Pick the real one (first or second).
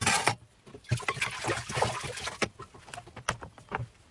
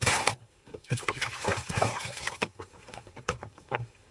first